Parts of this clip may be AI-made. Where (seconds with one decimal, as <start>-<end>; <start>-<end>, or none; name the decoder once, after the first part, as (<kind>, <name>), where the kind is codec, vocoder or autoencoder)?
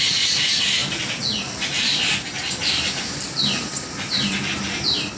0.8-3.0 (vocoder, BigVGAN v2)